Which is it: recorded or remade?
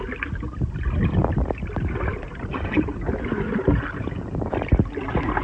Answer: recorded